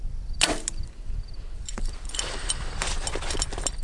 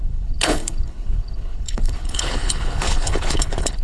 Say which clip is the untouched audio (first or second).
first